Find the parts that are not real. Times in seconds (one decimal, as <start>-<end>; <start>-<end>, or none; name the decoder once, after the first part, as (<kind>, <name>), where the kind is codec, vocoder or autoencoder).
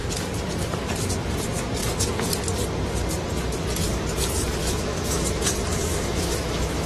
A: 4.6-5.2 (autoencoder, DAC-VAE); 5.7-6.9